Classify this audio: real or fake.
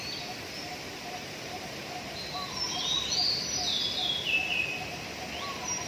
real